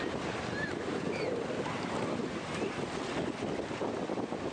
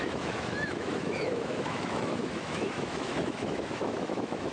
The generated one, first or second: second